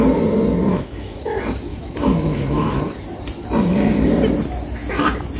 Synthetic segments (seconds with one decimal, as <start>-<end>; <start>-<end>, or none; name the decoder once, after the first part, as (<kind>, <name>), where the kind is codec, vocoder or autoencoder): 0.7-1.2 (autoencoder, DAC-VAE); 1.7-2.8